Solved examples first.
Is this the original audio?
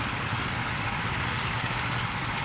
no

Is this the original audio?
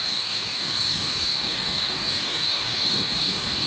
no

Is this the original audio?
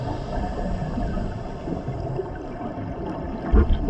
yes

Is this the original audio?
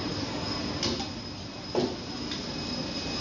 yes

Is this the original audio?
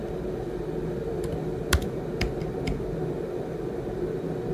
yes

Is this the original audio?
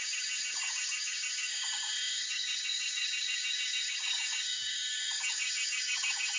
no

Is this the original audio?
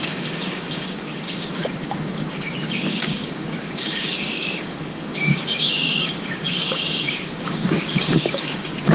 no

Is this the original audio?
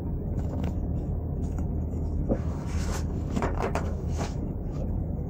no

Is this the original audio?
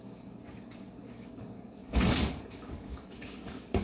no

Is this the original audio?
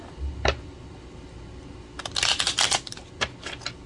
yes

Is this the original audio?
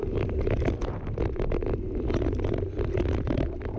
yes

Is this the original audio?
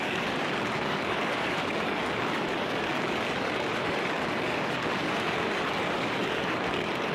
no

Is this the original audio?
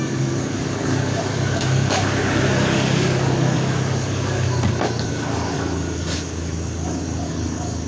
no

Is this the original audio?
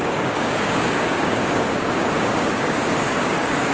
no